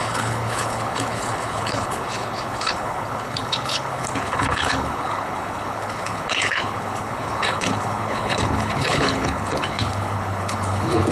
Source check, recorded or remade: remade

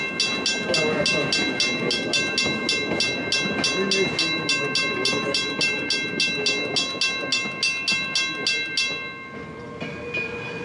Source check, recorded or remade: recorded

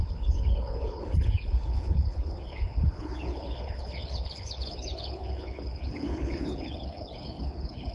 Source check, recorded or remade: remade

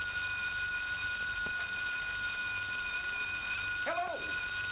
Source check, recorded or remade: recorded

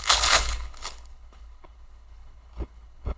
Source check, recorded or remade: remade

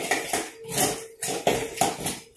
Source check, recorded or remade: recorded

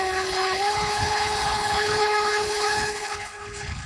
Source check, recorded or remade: remade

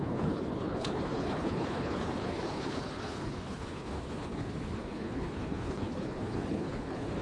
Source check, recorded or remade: remade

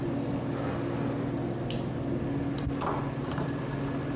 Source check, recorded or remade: recorded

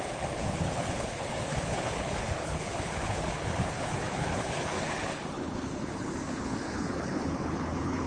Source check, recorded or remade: remade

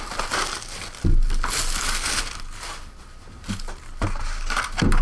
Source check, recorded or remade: recorded